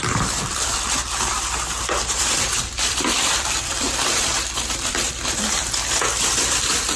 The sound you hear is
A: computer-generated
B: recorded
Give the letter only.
A